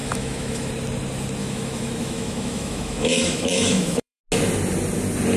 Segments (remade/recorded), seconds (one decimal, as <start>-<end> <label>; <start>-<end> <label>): 0.0-0.7 remade; 0.7-1.4 recorded; 1.4-4.2 remade; 4.2-5.4 recorded